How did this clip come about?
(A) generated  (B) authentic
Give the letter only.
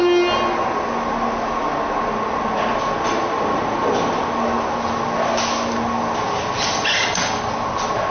B